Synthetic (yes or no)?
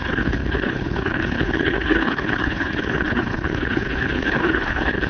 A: yes